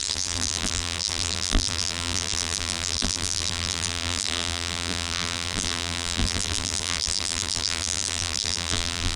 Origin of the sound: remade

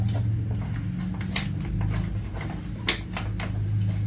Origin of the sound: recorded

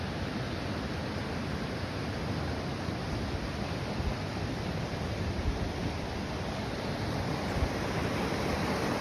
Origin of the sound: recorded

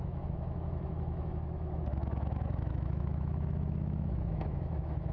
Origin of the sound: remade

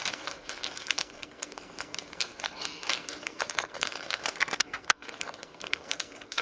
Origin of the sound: remade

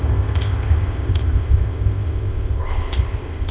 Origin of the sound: remade